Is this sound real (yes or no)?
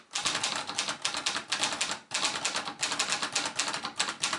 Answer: yes